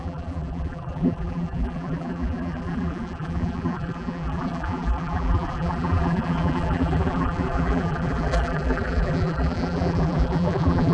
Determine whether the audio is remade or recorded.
remade